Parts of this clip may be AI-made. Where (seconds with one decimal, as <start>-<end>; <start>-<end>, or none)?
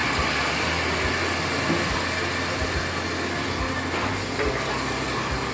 none